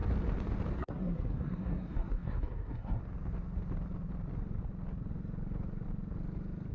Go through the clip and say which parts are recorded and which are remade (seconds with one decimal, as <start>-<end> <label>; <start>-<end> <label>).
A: 0.0-0.8 recorded; 0.8-3.0 remade; 3.0-6.7 recorded